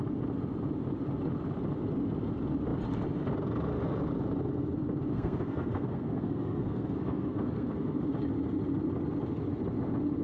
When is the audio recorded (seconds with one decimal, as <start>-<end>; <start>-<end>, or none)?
0.0-5.1; 8.0-10.2